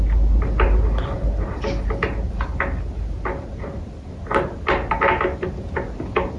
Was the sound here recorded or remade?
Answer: recorded